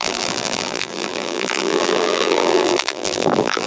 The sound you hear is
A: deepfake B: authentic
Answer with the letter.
A